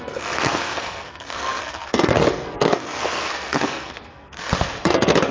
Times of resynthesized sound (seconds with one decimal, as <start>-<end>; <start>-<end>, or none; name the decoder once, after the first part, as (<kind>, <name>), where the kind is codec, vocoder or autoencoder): 0.0-5.3 (codec, SNAC)